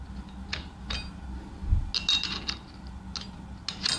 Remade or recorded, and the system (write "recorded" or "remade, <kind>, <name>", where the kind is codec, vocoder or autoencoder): recorded